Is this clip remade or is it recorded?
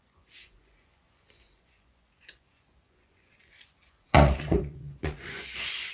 remade